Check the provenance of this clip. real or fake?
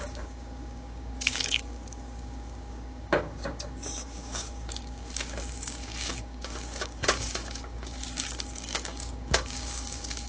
fake